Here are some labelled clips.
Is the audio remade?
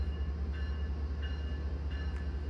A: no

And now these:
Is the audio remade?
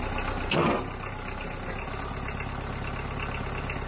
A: no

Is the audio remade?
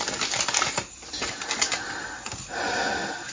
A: no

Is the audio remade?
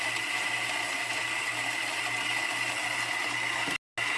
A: no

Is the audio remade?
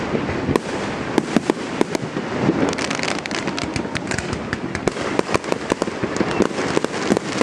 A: no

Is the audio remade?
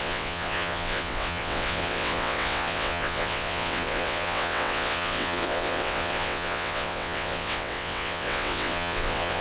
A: yes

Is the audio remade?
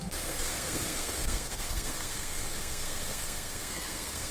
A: yes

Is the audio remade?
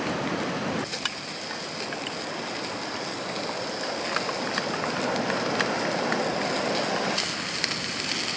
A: no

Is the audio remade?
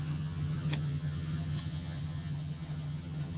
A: yes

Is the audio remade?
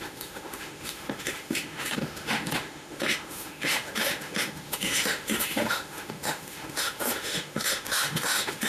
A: yes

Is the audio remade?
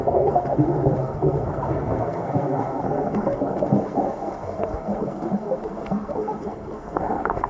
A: yes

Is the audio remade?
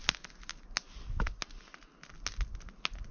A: no